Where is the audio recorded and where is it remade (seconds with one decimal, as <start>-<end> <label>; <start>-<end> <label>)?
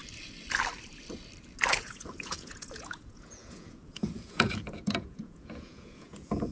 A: 0.0-1.7 recorded; 1.7-6.5 remade